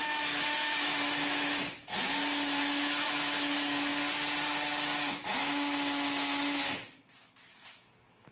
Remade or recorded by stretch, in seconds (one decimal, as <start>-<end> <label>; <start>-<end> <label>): 0.0-3.9 remade; 3.9-5.1 recorded; 5.1-8.3 remade